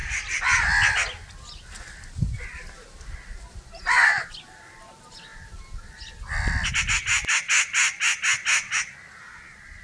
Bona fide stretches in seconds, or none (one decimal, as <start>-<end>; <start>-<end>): 0.0-9.8